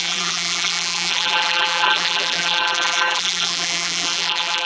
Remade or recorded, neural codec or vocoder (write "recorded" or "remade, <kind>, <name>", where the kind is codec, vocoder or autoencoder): remade, vocoder, BigVGAN v2